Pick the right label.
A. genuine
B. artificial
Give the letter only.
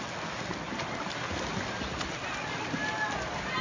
A